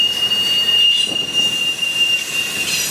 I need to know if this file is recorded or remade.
remade